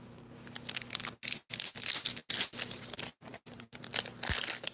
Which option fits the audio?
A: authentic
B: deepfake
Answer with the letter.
A